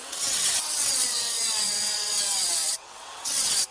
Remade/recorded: remade